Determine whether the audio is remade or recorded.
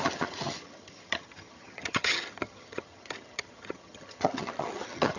remade